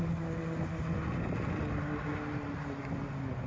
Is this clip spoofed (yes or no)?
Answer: no